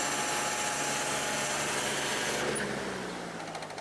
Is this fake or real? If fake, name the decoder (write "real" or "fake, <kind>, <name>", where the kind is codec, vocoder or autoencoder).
real